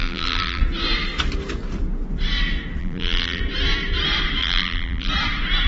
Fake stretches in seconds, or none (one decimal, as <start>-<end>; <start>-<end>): 0.0-0.6; 2.8-3.4; 4.4-5.1